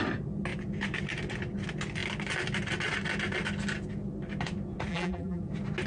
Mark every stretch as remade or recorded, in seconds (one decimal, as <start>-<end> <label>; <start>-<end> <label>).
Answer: 0.0-4.9 recorded; 4.9-5.4 remade; 5.4-5.9 recorded